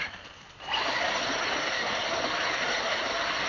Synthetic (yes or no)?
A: no